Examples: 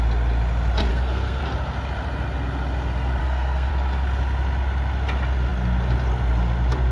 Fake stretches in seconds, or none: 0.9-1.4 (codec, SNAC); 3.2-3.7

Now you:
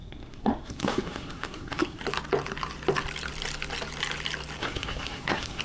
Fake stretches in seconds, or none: 0.0-2.0 (codec, SNAC); 4.6-5.6

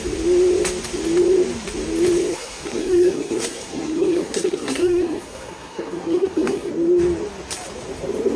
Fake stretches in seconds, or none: 2.3-6.7 (codec, SNAC)

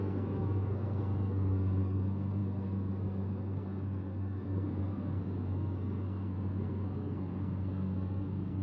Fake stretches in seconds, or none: 0.0-8.6 (codec, SNAC)

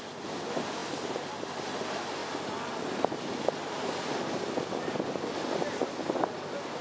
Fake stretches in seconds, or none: none

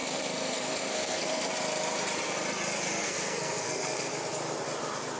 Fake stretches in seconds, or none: 0.0-1.5 (codec, SNAC); 3.0-4.1